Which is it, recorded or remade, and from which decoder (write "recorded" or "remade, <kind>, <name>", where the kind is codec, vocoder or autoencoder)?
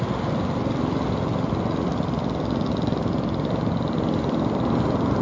recorded